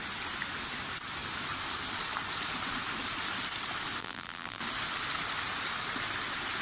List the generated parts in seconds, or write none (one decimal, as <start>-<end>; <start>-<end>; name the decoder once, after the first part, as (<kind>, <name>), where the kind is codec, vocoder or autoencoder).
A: 4.0-4.6 (vocoder, BigVGAN v2)

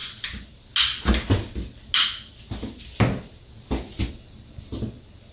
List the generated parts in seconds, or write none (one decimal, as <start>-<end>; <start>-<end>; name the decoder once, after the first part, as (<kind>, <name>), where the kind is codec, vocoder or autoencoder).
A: none

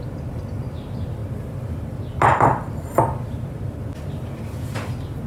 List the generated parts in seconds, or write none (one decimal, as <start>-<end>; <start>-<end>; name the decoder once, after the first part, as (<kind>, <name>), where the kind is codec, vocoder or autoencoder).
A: none

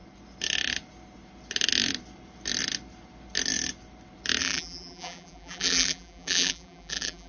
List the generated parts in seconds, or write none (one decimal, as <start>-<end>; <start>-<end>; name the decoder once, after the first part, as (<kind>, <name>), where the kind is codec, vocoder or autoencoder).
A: 4.4-7.3 (vocoder, BigVGAN v2)